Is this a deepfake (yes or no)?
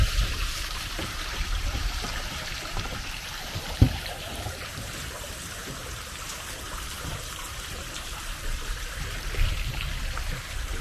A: yes